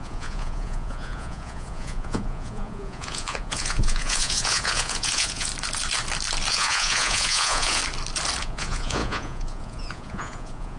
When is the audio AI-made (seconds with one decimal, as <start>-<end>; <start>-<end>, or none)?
0.0-5.5; 6.5-7.8; 8.4-10.8